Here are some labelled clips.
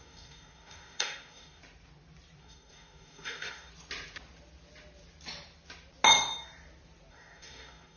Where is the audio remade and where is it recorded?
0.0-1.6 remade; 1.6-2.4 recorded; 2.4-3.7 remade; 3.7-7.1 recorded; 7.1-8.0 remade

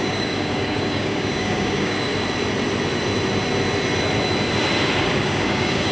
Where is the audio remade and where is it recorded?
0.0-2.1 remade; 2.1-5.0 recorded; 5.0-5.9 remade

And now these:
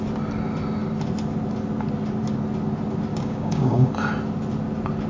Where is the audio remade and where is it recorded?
0.0-3.1 recorded; 3.1-3.9 remade; 3.9-5.1 recorded